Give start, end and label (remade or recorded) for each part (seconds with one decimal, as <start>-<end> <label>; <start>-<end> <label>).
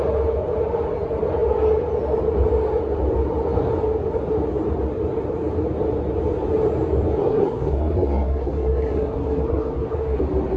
0.0-7.2 recorded; 7.2-10.2 remade; 10.2-10.6 recorded